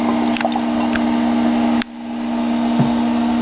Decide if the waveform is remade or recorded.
recorded